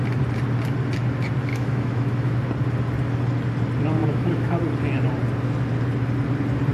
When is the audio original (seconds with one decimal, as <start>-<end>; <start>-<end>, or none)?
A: 0.0-1.5; 2.4-4.0; 4.6-6.7